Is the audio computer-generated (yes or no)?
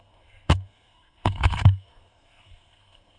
yes